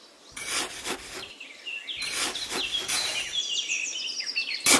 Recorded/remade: recorded